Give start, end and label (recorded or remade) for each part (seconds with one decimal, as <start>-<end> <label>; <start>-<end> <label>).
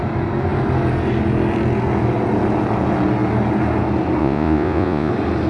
0.0-4.2 recorded; 4.2-5.1 remade; 5.1-5.5 recorded